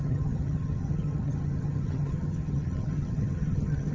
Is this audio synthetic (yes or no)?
yes